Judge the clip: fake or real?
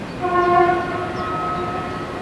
real